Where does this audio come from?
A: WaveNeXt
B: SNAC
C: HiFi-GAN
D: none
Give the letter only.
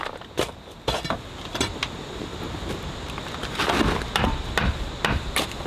D